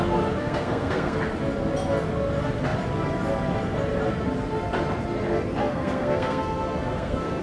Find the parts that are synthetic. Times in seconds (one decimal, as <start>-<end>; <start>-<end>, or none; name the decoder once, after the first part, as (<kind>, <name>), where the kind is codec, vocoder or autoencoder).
0.4-1.2 (codec, SNAC); 5.6-7.4